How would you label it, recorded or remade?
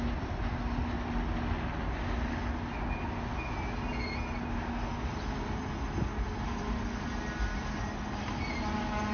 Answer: recorded